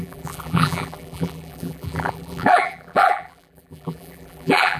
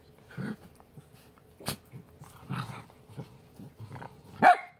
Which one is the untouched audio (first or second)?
second